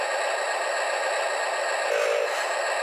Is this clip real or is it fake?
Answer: real